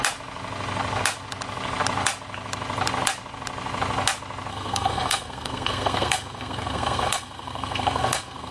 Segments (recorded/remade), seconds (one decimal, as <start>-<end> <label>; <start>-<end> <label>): 0.0-4.5 recorded; 4.5-8.5 remade